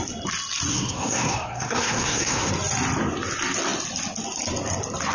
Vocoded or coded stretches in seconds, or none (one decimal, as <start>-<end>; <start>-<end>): 0.7-2.5